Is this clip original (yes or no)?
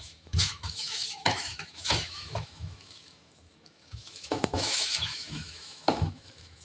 no